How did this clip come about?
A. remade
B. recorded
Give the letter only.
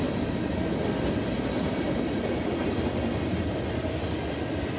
B